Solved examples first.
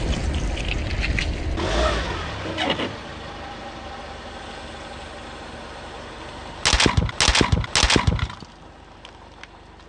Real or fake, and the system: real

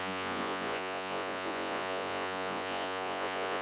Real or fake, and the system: fake, vocoder, Vocos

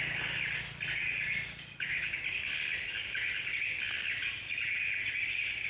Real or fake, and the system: real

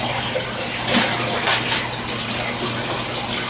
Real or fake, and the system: real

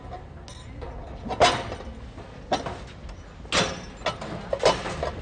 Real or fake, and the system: real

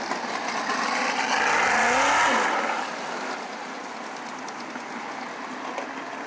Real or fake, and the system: real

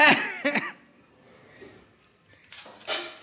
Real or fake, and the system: real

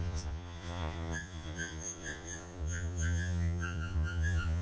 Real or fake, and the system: fake, vocoder, Vocos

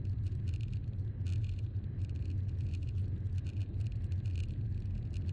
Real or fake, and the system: real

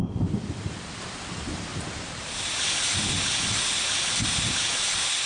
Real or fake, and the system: real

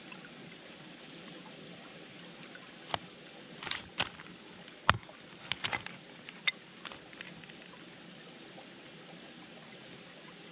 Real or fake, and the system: real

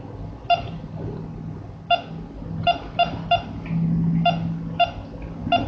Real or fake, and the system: real